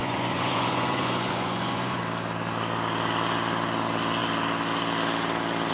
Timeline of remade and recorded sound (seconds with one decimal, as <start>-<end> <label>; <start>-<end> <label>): 0.0-2.0 remade; 2.0-5.7 recorded